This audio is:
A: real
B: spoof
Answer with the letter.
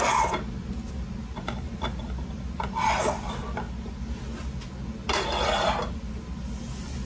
A